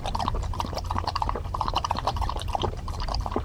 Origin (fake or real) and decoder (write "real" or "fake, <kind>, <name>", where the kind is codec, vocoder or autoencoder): fake, vocoder, BigVGAN v2